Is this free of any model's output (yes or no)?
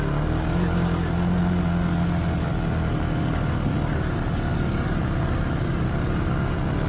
yes